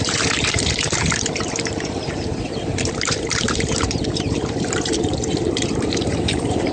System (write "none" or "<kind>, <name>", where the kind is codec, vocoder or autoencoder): vocoder, BigVGAN v2